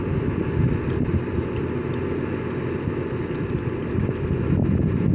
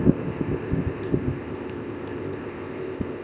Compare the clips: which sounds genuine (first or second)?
first